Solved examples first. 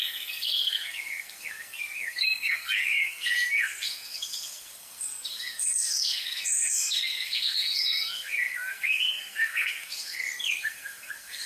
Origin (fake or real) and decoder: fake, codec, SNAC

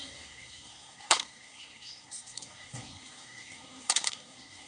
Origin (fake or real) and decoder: fake, codec, SNAC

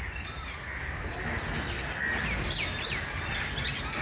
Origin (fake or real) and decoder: real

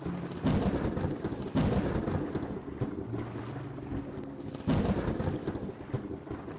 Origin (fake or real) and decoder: real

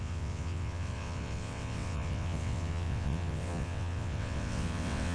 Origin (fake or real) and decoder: fake, vocoder, WaveNeXt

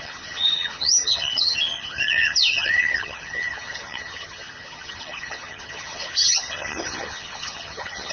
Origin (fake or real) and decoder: fake, vocoder, HiFi-GAN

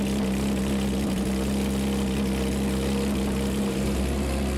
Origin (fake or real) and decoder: real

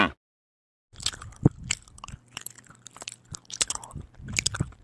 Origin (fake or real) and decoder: real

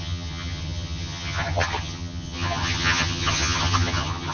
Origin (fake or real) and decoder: fake, vocoder, HiFi-GAN